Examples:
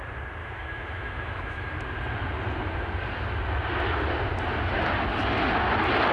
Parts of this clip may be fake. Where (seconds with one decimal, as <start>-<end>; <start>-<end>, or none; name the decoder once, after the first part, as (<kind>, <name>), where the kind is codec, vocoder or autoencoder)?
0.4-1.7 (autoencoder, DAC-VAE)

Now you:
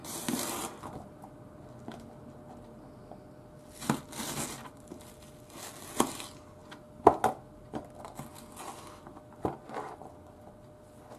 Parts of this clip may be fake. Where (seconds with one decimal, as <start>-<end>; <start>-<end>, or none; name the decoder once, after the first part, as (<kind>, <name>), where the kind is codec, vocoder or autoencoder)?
0.0-1.0 (vocoder, BigVGAN v2)

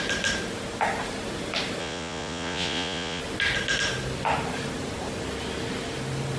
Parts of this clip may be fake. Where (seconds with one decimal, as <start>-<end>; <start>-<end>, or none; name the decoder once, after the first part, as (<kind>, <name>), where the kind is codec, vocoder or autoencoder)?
1.8-3.2 (vocoder, Vocos)

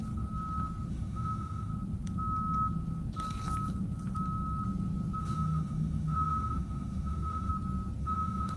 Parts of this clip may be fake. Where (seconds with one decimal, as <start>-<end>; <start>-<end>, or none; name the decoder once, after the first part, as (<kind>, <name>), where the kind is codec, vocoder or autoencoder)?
0.9-1.7 (autoencoder, DAC-VAE); 5.2-7.5; 8.0-8.6

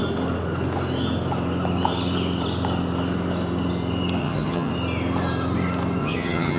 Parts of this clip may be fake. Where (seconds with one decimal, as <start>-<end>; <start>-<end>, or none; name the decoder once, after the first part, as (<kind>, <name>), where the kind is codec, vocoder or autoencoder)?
4.2-4.7 (vocoder, HiFi-GAN); 6.0-6.6

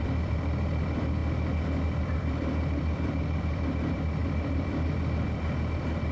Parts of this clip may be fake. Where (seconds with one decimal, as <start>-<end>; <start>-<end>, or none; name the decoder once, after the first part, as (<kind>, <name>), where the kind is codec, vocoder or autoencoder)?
0.0-1.2 (vocoder, BigVGAN v2); 2.0-6.1

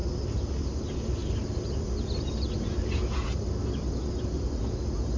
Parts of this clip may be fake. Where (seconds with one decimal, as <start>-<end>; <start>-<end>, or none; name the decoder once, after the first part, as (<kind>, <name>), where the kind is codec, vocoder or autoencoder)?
none

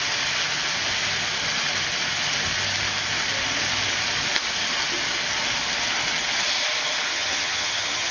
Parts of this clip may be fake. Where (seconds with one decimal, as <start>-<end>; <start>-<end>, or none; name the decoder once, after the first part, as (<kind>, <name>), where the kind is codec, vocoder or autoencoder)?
7.1-8.1 (vocoder, HiFi-GAN)